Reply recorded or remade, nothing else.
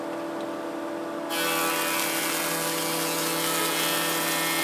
recorded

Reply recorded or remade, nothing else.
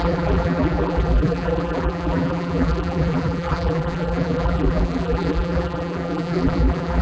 remade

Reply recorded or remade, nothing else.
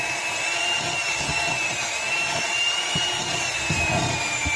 recorded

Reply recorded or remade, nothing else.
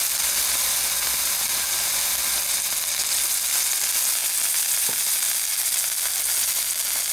recorded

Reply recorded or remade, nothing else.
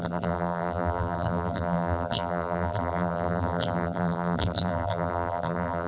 remade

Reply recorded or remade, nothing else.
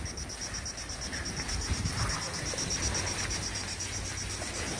recorded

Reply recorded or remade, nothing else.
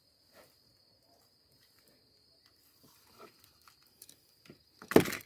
recorded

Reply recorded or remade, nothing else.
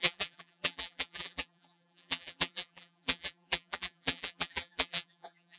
remade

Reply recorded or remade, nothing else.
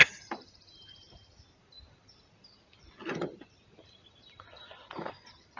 remade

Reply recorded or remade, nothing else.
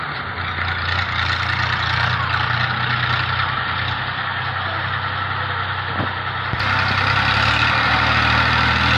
recorded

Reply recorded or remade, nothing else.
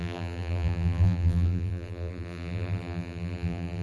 remade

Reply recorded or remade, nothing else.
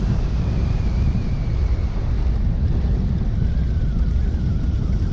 remade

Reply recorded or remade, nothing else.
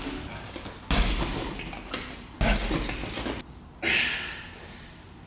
recorded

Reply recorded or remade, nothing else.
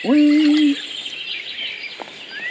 recorded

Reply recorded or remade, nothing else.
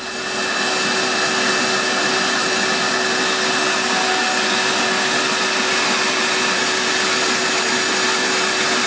recorded